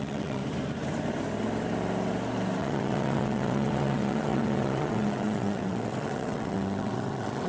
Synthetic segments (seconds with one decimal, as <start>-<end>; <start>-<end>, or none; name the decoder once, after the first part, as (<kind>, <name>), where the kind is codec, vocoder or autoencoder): 0.0-0.4 (vocoder, WaveNeXt); 2.6-7.5